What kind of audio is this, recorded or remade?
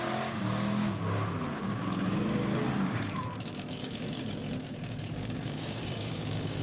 remade